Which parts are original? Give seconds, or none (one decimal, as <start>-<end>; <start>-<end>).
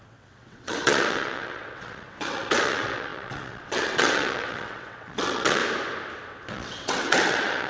5.6-6.5